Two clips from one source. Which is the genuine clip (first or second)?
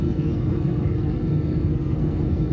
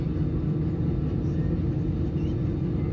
second